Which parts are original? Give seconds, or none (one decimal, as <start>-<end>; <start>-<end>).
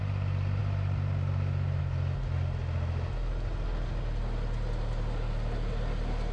0.0-6.3